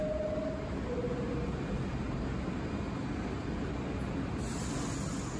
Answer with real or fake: real